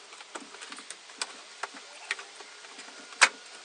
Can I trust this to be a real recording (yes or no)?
yes